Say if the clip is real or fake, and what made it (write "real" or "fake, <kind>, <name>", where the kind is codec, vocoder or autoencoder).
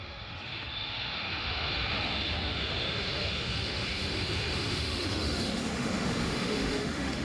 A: fake, autoencoder, DAC-VAE